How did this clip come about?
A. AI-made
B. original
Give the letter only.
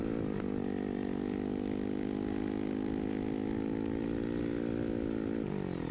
B